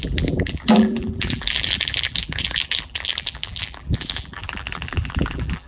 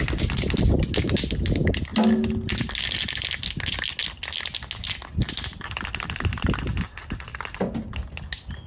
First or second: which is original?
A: second